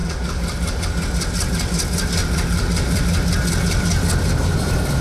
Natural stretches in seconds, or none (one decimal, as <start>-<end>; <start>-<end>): 0.8-2.2; 3.0-5.0